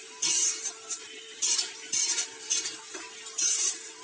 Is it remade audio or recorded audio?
remade